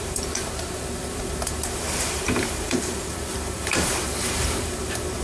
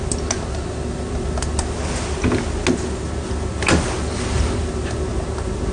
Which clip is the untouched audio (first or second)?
second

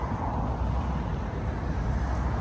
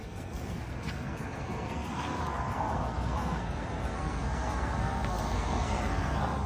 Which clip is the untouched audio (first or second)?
first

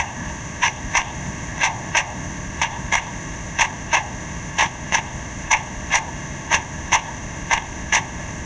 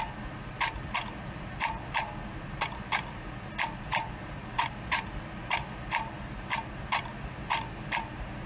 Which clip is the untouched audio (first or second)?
second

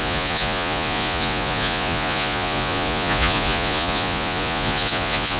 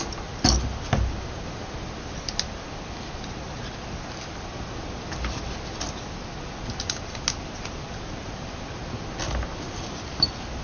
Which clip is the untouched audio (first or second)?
second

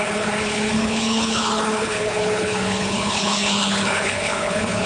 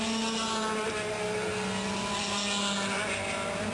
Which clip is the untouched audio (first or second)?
second